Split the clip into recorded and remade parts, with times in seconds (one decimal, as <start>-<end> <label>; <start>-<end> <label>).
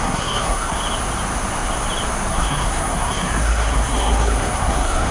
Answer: 0.0-0.8 remade; 0.8-2.3 recorded; 2.3-5.1 remade